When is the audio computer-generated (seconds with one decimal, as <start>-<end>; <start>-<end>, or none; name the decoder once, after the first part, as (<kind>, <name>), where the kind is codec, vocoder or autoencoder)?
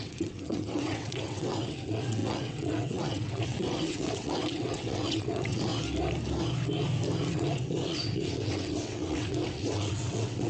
0.0-5.7 (vocoder, WaveNeXt); 7.3-10.5